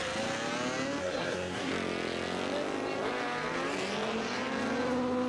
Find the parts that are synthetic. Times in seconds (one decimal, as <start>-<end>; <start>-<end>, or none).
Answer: 1.0-1.7